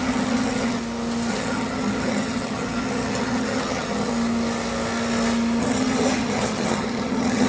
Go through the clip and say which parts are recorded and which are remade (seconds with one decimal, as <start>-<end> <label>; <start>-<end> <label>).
0.0-0.8 remade; 0.8-1.3 recorded; 1.3-4.1 remade; 4.1-5.6 recorded; 5.6-7.5 remade